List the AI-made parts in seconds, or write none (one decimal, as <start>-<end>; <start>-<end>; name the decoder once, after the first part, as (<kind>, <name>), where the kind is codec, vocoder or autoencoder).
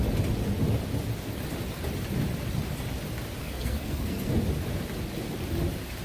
3.4-4.3 (codec, SNAC)